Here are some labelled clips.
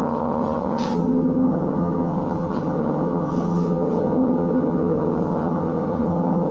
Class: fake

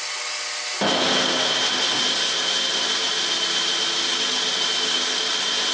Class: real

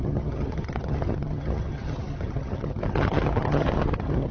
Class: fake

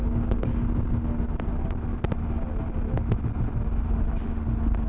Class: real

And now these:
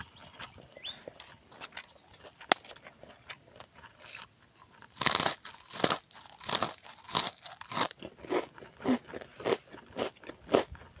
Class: real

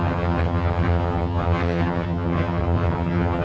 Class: fake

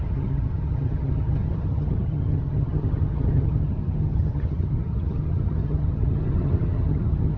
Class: fake